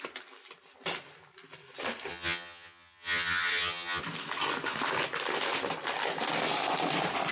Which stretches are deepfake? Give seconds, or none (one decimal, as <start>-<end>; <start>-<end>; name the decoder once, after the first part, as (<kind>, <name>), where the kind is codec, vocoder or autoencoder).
2.1-4.0 (vocoder, HiFi-GAN)